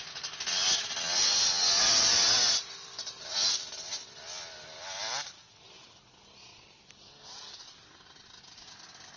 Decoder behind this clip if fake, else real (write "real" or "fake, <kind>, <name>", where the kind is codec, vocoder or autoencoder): real